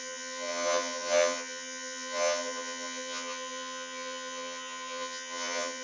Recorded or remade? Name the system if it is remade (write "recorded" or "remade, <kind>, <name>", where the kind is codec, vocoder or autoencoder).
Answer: remade, vocoder, HiFi-GAN